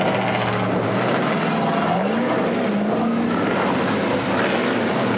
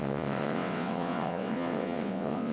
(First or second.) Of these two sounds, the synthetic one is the second